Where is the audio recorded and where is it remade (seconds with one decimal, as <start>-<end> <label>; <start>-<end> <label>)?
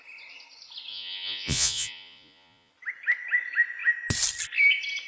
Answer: 0.0-0.9 recorded; 0.9-2.7 remade; 2.7-5.1 recorded